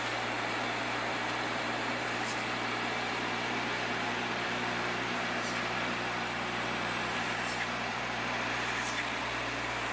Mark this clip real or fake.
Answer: fake